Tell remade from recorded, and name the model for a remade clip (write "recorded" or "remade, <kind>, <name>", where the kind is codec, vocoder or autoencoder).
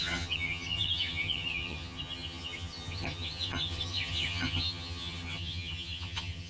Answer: remade, vocoder, HiFi-GAN